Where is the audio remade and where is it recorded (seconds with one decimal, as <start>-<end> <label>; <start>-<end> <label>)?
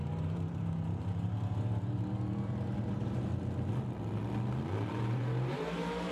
0.0-3.3 remade; 3.3-4.9 recorded; 4.9-6.1 remade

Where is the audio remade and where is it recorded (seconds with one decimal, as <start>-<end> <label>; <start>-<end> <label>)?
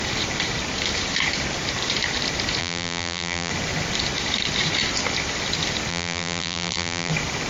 0.0-2.6 recorded; 2.6-3.5 remade; 3.5-5.9 recorded; 5.9-7.1 remade; 7.1-7.5 recorded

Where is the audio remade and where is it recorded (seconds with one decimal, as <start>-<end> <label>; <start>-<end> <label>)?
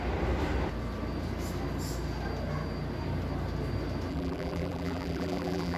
0.0-4.1 recorded; 4.1-5.8 remade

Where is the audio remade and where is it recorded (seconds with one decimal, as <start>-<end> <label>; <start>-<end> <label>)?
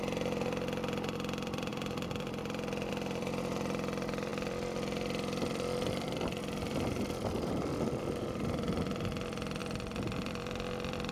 0.0-9.6 remade; 9.6-10.2 recorded; 10.2-11.1 remade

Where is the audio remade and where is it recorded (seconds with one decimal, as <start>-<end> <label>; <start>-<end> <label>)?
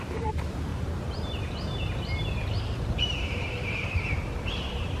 0.0-0.7 remade; 0.7-1.4 recorded; 1.4-3.8 remade; 3.8-5.0 recorded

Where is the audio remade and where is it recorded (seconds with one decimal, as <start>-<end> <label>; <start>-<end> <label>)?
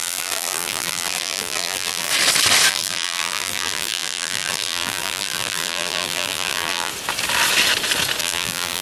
0.0-2.1 remade; 2.1-2.7 recorded; 2.7-6.9 remade; 6.9-8.2 recorded; 8.2-8.8 remade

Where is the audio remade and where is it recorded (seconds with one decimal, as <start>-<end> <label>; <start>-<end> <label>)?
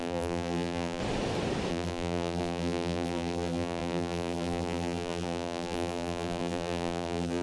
0.0-1.0 remade; 1.0-1.7 recorded; 1.7-7.4 remade